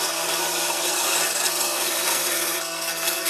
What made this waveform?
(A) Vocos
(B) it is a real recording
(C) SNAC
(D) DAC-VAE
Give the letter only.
C